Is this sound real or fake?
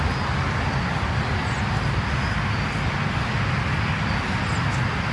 real